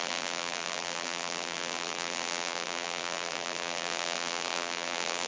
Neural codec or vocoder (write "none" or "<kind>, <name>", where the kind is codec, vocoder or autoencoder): vocoder, BigVGAN v2